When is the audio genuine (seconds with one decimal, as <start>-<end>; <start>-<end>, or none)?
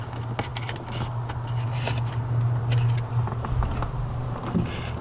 0.0-5.0